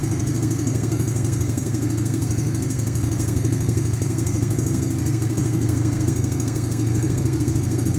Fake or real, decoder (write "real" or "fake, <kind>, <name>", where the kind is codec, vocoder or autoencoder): fake, codec, SNAC